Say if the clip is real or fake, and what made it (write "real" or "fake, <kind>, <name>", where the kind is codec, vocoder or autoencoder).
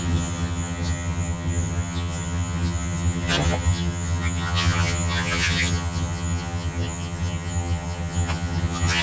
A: fake, vocoder, HiFi-GAN